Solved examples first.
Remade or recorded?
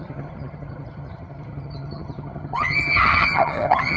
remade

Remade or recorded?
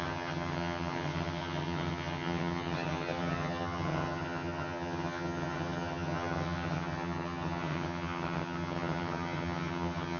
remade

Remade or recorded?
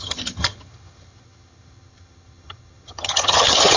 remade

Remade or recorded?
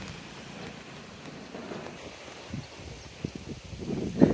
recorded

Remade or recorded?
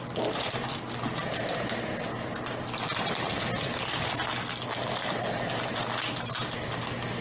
recorded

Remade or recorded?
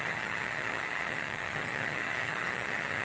remade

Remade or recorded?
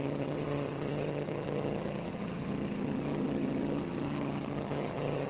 remade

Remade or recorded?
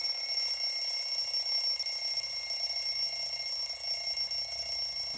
recorded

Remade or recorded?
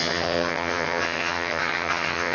remade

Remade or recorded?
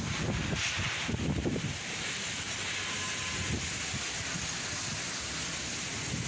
recorded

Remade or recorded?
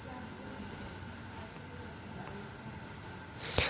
recorded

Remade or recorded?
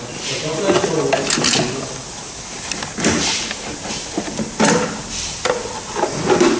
recorded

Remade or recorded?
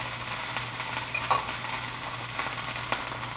recorded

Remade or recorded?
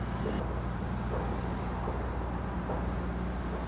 recorded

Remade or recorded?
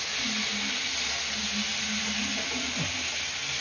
recorded